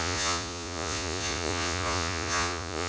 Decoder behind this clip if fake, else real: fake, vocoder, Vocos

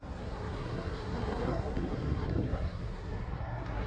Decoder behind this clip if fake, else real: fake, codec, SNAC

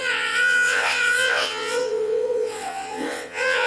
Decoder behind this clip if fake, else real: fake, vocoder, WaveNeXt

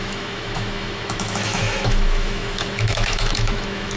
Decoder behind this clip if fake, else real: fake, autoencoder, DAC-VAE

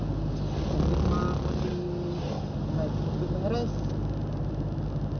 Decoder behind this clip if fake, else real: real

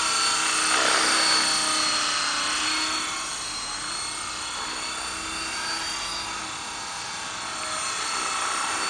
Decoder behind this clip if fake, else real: real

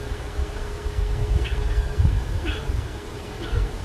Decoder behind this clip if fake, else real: fake, codec, SNAC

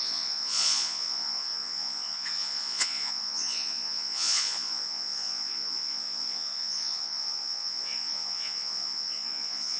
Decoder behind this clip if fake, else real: fake, vocoder, Vocos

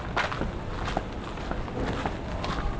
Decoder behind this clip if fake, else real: real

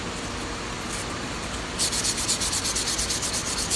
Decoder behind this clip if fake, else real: real